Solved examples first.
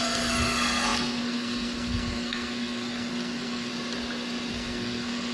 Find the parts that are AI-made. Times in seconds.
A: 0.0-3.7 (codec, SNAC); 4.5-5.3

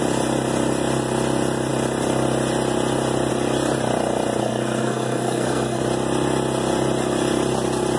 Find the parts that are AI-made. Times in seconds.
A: 4.4-5.8 (codec, SNAC)

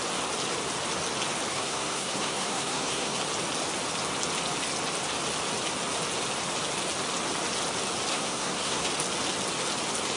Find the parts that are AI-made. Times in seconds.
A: 1.5-3.2 (codec, SNAC); 8.1-8.9

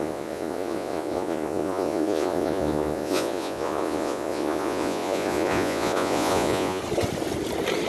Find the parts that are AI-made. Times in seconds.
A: 0.0-6.8 (vocoder, Vocos)

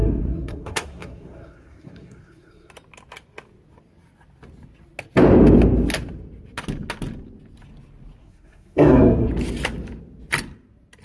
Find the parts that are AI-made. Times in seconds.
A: 0.0-2.7 (codec, SNAC); 8.2-9.3

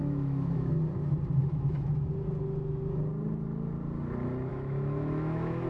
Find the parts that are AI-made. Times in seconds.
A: 0.0-0.7 (autoencoder, DAC-VAE); 1.4-1.9; 4.5-5.7

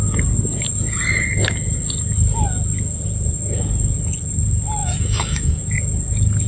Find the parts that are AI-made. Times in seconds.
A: 4.8-5.7 (autoencoder, DAC-VAE)